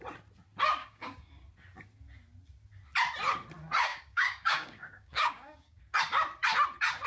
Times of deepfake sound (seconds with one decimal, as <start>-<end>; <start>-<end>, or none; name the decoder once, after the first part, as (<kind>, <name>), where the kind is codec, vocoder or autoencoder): 0.8-1.3 (codec, DAC); 3.9-5.8